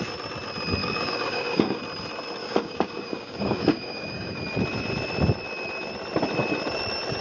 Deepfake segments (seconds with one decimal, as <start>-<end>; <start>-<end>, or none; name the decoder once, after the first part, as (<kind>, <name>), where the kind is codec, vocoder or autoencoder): 0.8-1.8 (codec, DAC); 2.4-4.4